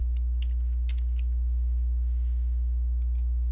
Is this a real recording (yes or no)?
yes